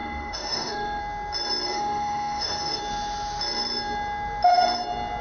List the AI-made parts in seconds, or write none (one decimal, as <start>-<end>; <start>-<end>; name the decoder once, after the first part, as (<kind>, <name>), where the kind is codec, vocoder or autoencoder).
0.0-1.0 (autoencoder, DAC-VAE); 1.7-2.8